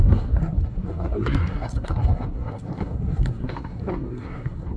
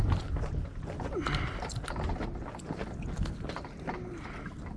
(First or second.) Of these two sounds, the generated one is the first